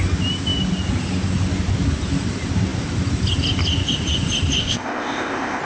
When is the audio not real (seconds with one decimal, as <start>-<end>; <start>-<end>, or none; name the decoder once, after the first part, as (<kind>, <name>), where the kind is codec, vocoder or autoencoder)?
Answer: 4.6-5.6 (codec, ZipCodec)